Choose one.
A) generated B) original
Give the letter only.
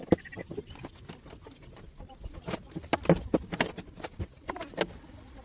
B